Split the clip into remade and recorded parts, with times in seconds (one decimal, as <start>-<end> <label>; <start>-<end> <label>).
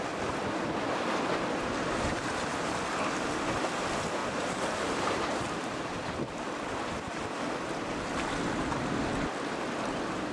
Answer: 0.0-2.1 recorded; 2.1-2.7 remade; 2.7-4.2 recorded; 4.2-5.8 remade; 5.8-10.3 recorded